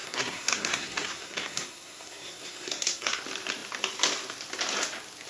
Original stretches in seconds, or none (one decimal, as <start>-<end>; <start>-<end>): 3.2-5.3

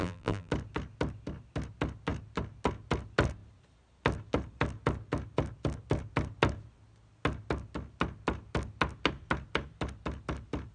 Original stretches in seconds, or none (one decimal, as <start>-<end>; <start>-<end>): 0.5-10.7

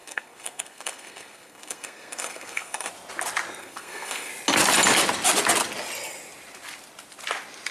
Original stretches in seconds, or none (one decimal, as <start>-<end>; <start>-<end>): 2.9-3.6; 4.3-7.7

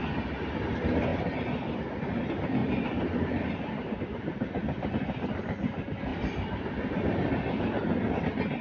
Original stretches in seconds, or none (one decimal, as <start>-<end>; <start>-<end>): 0.0-1.1; 1.8-2.6; 4.9-6.1; 8.2-8.6

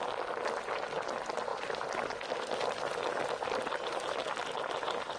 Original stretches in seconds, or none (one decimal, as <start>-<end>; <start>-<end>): 0.0-5.2

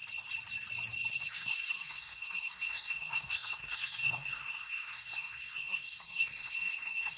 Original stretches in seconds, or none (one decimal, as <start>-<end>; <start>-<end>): 0.0-1.1

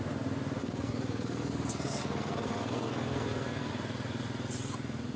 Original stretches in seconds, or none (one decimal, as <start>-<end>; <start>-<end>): 0.0-0.6; 3.7-5.2

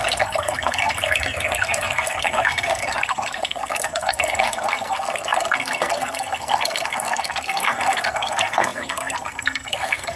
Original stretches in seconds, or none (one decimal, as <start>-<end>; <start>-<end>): none